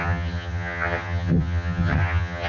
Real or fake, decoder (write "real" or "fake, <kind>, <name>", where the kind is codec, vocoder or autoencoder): fake, vocoder, HiFi-GAN